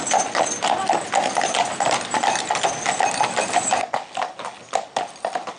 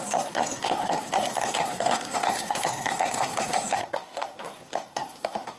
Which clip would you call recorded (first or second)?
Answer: first